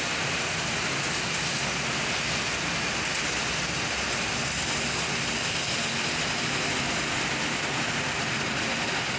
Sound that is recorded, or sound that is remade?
recorded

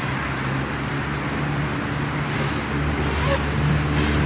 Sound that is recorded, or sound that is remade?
recorded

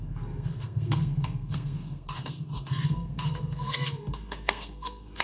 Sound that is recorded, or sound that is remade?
remade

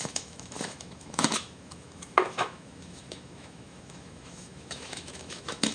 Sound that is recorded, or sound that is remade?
remade